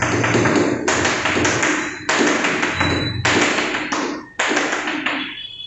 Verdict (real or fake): real